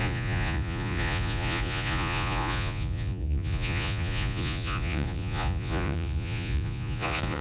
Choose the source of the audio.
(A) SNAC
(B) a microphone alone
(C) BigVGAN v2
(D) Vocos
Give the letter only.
D